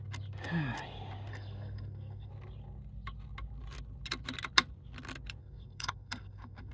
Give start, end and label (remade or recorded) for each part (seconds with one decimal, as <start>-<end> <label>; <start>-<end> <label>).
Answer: 0.0-1.3 recorded; 1.3-2.3 remade; 2.3-5.4 recorded; 5.4-6.7 remade